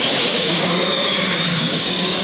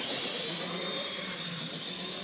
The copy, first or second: first